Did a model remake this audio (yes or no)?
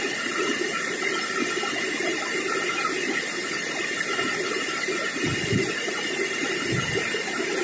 no